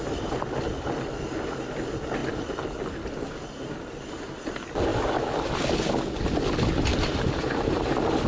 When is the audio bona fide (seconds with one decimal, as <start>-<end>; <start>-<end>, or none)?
0.0-6.9; 7.9-8.3